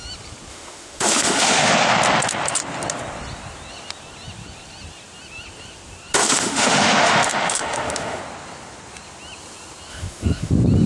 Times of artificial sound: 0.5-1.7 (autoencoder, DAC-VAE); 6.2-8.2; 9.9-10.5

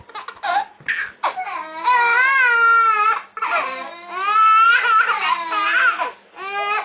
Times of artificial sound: none

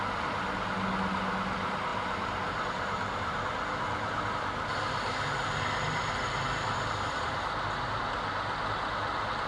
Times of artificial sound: none

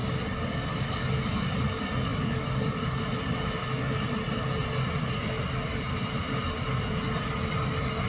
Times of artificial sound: none